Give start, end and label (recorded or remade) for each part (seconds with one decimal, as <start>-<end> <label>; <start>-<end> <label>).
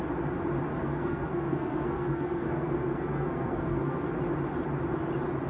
0.0-0.8 recorded; 0.8-4.1 remade; 4.1-5.5 recorded